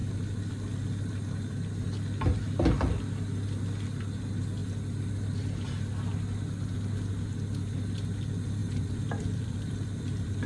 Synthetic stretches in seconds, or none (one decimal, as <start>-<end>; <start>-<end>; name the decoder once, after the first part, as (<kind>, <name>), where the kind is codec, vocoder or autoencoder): 0.0-0.5 (vocoder, BigVGAN v2); 8.6-10.5